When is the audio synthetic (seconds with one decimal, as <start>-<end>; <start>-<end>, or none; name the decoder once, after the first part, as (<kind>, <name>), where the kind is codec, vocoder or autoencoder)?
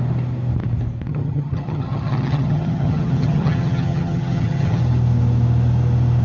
1.1-4.8 (vocoder, HiFi-GAN)